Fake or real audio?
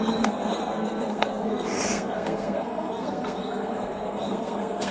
fake